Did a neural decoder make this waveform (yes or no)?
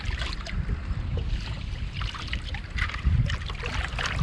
no